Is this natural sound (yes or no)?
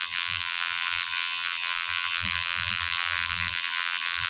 no